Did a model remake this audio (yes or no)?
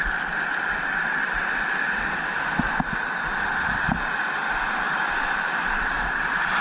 no